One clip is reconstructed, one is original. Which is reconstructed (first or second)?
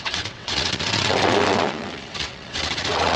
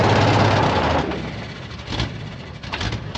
first